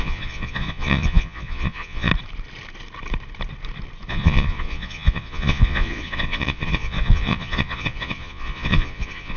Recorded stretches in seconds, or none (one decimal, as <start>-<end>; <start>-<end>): 2.1-4.1